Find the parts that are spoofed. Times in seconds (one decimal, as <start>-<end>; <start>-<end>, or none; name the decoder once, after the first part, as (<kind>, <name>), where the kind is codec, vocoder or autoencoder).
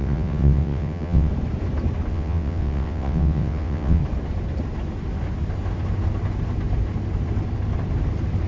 0.0-1.3 (vocoder, WaveNeXt); 2.1-4.0